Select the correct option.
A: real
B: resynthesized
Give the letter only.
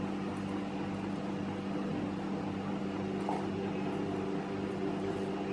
A